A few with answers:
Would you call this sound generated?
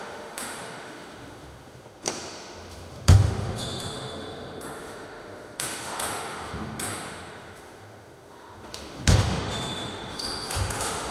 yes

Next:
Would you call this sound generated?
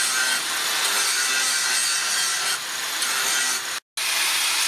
no